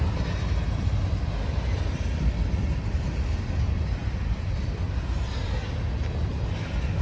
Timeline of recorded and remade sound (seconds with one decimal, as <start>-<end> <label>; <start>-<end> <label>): 0.0-4.0 recorded; 4.0-5.3 remade; 5.3-7.0 recorded